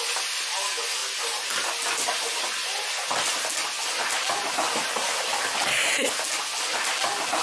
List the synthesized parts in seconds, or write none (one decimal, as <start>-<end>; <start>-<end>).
none

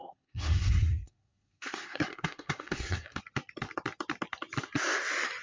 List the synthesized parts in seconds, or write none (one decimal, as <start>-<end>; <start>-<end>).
0.0-3.2

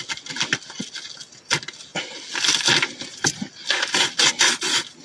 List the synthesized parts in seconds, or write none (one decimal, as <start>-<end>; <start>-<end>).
none

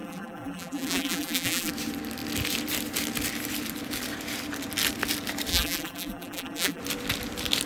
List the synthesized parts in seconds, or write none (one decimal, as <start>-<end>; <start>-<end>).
0.0-1.7; 5.5-6.8